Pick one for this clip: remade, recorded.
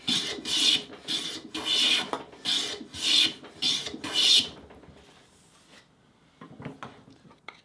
recorded